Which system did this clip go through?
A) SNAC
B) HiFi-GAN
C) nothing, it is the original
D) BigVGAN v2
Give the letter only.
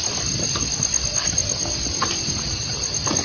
D